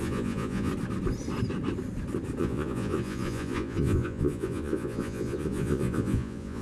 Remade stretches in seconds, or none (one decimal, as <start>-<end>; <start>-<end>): 0.0-0.7; 2.4-6.6